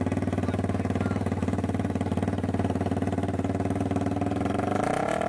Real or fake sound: real